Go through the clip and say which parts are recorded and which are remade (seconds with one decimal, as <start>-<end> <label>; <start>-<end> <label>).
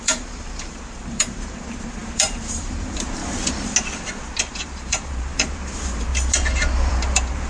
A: 0.0-3.2 remade; 3.2-4.4 recorded; 4.4-6.1 remade; 6.1-6.9 recorded; 6.9-7.5 remade